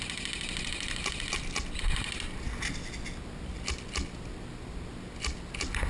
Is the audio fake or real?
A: real